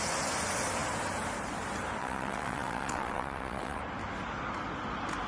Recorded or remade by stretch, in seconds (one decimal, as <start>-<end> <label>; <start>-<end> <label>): 0.0-2.0 recorded; 2.0-3.8 remade; 3.8-5.3 recorded